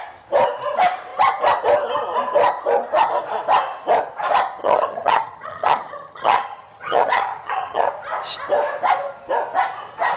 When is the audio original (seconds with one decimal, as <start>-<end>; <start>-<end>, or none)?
0.0-4.6; 7.9-10.2